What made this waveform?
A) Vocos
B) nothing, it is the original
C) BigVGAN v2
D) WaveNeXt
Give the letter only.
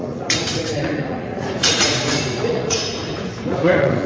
A